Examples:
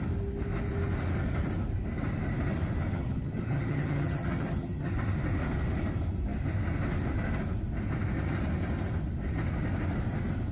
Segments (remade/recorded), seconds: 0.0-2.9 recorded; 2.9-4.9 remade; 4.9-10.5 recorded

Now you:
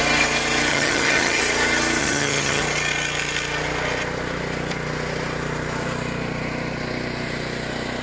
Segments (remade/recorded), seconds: 0.0-0.7 recorded; 0.7-1.4 remade; 1.4-2.0 recorded; 2.0-2.6 remade; 2.6-8.0 recorded